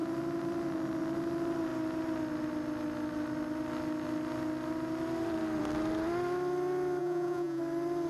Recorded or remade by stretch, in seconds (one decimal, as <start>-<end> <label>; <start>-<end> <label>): 0.0-7.0 recorded; 7.0-7.6 remade; 7.6-8.1 recorded